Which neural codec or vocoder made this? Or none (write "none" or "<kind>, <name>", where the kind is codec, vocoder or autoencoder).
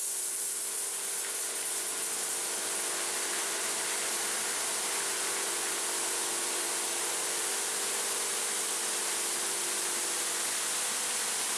none